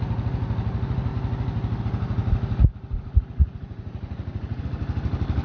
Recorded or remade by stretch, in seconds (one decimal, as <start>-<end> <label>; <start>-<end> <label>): 0.0-3.4 recorded; 3.4-4.6 remade; 4.6-5.4 recorded